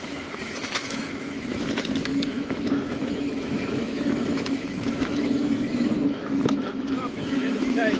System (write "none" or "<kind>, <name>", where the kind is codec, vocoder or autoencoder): autoencoder, DAC-VAE